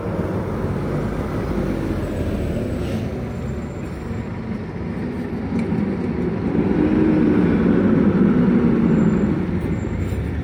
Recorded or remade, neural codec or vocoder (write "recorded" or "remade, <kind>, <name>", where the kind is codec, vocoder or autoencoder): recorded